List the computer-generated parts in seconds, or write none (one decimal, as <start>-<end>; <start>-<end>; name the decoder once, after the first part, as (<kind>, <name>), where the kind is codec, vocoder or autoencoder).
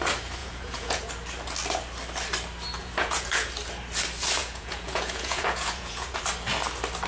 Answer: 0.4-1.1 (vocoder, Vocos); 2.8-3.5; 4.4-6.2